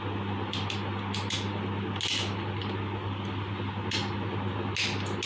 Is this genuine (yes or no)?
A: yes